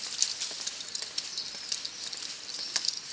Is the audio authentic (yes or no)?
yes